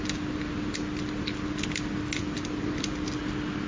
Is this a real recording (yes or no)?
yes